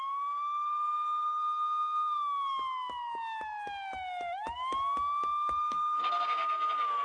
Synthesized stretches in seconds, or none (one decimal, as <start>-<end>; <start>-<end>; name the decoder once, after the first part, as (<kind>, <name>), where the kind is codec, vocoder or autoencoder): 0.0-1.4 (codec, SNAC); 5.6-7.0